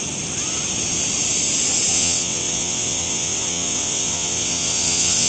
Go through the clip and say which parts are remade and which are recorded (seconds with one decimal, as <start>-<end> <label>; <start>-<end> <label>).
0.0-1.9 recorded; 1.9-5.3 remade